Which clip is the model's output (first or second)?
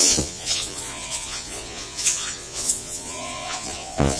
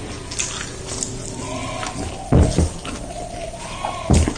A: first